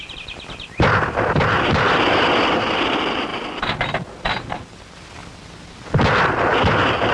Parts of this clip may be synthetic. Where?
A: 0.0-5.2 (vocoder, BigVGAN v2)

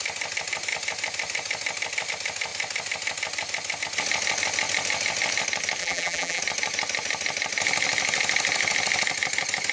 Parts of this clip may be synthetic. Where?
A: 5.8-6.4 (vocoder, BigVGAN v2)

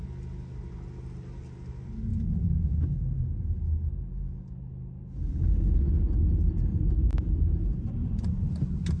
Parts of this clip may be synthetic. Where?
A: 6.7-8.5 (vocoder, BigVGAN v2)

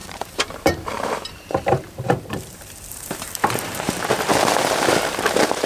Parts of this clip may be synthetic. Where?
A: 0.0-4.3 (vocoder, BigVGAN v2); 5.1-5.7

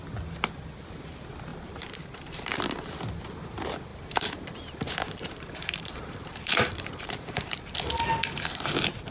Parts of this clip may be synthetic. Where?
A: 1.5-2.9 (vocoder, BigVGAN v2); 3.9-7.6